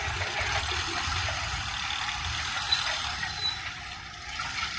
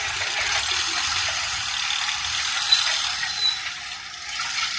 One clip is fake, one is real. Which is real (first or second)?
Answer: second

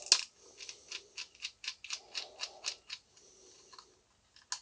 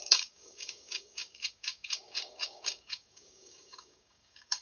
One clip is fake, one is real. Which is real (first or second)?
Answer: first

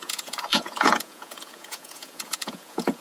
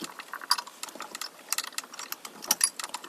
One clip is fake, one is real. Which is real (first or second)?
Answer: second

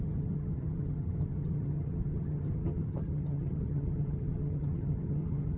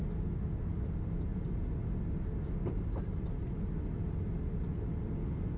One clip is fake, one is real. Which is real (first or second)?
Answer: second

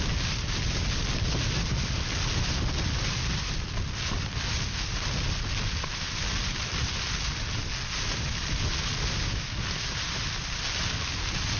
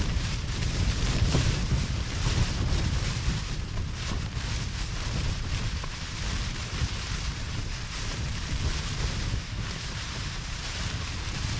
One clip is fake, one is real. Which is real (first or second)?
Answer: first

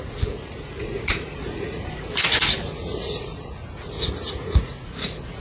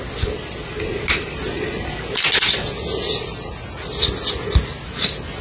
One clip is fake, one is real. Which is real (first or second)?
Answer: second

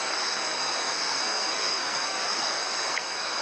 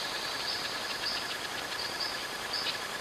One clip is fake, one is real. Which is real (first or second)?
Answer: second